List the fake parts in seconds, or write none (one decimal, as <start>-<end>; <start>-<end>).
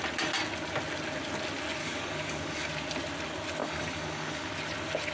1.8-2.7; 3.6-4.5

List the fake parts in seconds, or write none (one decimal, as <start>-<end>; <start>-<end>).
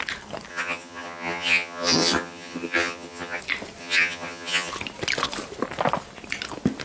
0.5-3.4; 3.8-4.7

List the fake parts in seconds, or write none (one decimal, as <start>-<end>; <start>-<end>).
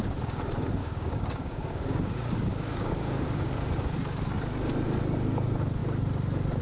0.8-3.5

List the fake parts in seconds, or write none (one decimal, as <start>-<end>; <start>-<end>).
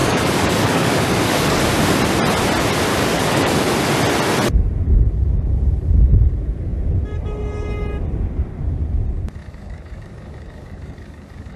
0.0-1.6; 2.9-3.6; 9.4-11.6